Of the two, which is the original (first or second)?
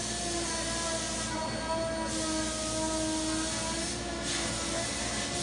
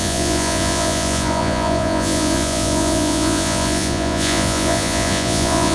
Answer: first